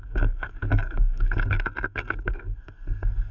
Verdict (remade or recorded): remade